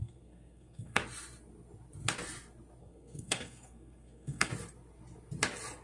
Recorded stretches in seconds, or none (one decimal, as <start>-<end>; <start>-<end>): 1.0-2.8; 4.5-5.8